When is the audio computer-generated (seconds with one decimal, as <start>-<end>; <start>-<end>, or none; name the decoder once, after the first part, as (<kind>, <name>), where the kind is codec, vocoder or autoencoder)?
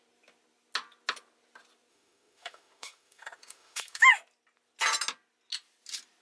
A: 1.9-4.1 (autoencoder, DAC-VAE)